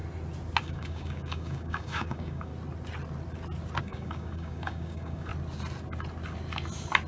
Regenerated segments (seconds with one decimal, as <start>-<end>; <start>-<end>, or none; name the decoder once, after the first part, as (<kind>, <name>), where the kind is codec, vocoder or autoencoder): 0.6-2.5 (codec, DAC); 3.8-5.3